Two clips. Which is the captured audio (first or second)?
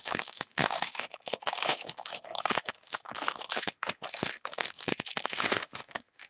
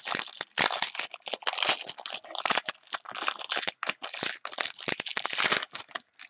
second